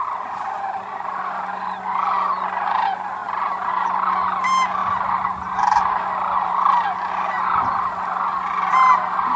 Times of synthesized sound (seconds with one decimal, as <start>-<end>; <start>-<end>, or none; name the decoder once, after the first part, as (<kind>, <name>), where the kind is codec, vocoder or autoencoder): none